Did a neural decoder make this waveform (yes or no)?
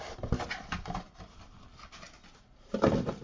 no